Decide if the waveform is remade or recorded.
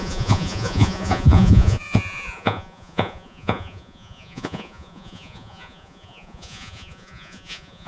remade